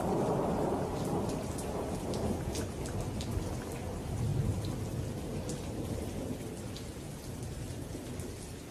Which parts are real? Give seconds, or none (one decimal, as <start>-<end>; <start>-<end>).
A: 0.0-8.7